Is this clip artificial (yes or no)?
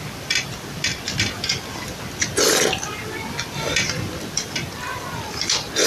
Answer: no